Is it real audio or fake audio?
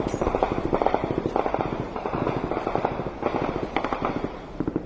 fake